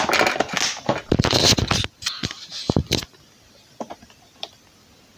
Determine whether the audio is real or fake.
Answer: real